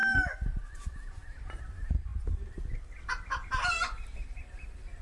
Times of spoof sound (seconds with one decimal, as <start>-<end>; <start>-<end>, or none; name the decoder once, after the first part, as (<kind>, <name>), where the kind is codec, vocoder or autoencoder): none